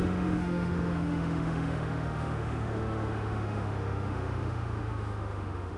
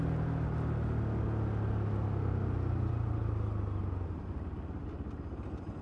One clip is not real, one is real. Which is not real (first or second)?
first